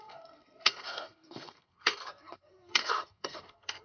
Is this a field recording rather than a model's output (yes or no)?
no